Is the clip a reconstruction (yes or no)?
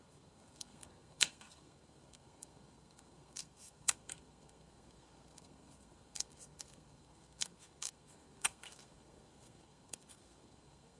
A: yes